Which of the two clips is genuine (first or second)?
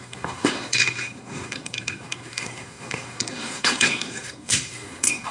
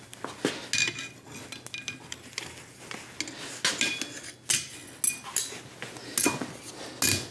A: second